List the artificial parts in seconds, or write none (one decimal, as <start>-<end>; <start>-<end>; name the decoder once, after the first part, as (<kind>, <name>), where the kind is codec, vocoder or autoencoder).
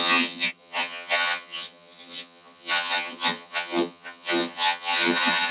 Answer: 0.0-5.5 (vocoder, HiFi-GAN)